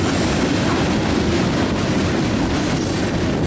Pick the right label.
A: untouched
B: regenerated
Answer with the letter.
A